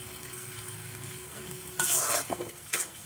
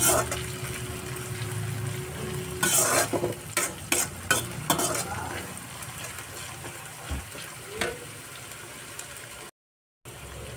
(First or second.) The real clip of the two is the second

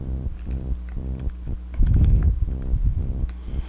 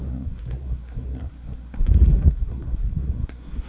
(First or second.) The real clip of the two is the first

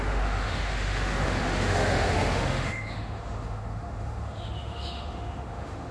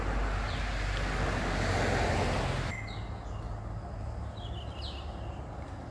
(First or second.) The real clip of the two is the second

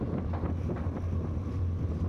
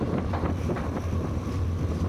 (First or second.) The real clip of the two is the first